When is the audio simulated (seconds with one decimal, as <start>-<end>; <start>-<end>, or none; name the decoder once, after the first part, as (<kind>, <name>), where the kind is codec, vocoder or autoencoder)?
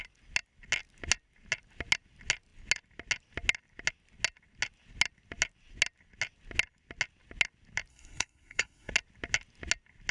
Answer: 7.9-8.9 (codec, SNAC)